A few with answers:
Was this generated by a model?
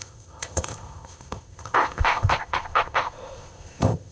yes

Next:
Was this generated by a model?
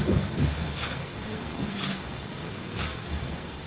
yes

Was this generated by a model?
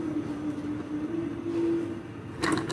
no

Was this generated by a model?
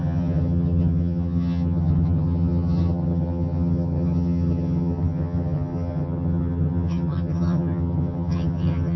yes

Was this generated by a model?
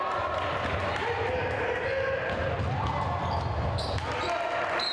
no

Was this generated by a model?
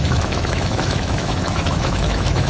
yes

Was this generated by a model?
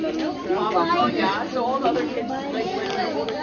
no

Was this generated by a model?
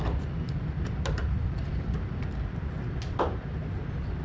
no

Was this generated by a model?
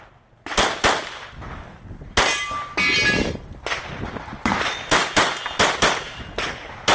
no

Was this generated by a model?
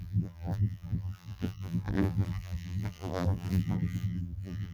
yes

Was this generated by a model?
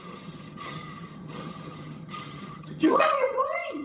yes